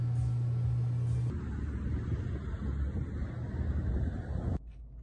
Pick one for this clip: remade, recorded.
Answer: recorded